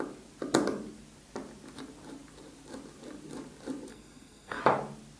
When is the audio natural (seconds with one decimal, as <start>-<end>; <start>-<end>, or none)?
0.0-3.9; 4.6-5.2